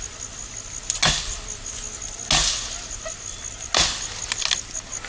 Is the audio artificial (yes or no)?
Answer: no